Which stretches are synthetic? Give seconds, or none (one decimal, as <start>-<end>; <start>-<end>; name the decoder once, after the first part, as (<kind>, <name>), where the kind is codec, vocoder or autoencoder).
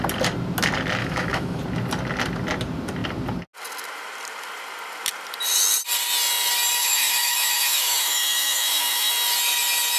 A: 1.0-1.6 (autoencoder, DAC-VAE); 6.8-9.1